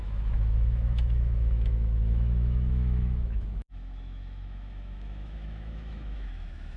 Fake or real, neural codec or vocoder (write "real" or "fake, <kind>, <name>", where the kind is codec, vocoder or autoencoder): fake, autoencoder, DAC-VAE